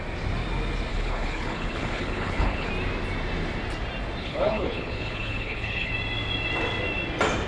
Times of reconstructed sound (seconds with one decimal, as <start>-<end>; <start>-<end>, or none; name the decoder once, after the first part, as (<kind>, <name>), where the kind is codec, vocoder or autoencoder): 0.9-2.7 (codec, HILCodec); 4.2-5.9